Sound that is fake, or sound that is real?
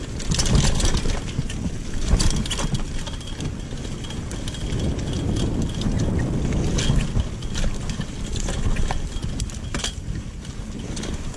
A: real